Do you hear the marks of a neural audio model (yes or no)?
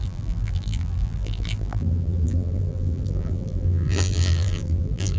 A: yes